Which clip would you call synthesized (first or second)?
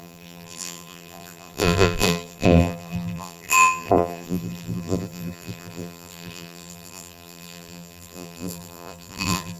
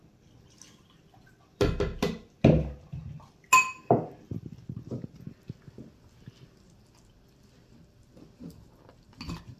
first